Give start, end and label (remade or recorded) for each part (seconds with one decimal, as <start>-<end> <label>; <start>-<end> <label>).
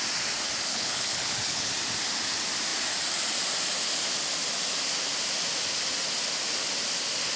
0.0-0.7 recorded; 0.7-1.7 remade; 1.7-7.4 recorded